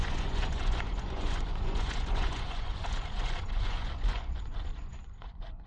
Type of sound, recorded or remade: remade